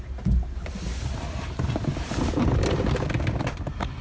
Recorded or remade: recorded